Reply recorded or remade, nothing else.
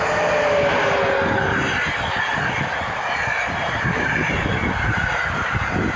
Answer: recorded